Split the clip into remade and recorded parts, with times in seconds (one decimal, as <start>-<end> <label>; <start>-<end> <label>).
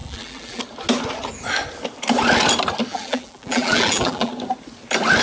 0.0-0.6 remade; 0.6-2.9 recorded; 2.9-4.3 remade; 4.3-5.2 recorded